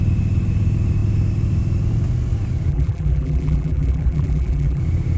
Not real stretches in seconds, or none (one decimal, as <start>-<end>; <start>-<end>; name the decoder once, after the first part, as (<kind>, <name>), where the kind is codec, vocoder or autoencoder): 2.7-4.8 (vocoder, BigVGAN v2)